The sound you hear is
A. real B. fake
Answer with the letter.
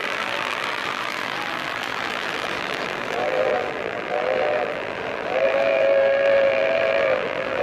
B